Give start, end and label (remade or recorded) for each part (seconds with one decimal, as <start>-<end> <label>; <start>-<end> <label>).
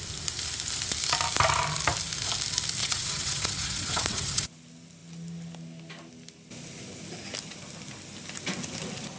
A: 0.0-2.8 recorded; 2.8-4.5 remade; 4.5-9.2 recorded